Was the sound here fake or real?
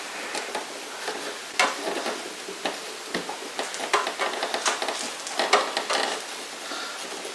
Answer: real